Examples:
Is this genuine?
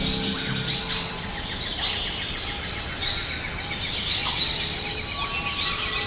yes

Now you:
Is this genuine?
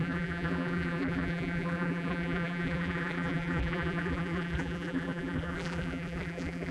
no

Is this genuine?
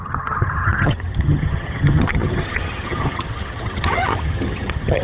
no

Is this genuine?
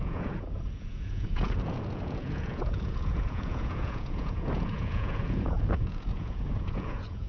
no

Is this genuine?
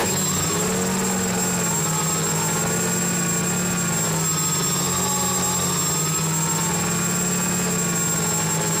yes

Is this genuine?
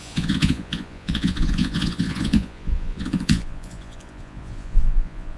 no